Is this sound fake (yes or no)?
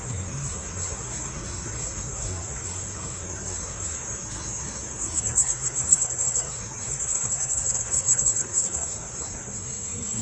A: yes